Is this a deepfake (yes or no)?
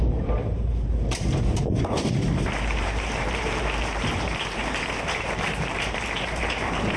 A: yes